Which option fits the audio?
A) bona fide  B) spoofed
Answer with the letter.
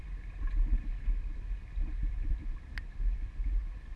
A